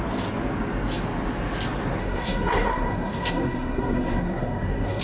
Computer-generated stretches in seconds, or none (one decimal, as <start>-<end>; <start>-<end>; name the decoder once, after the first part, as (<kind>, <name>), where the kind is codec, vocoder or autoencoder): 2.0-5.0 (codec, SNAC)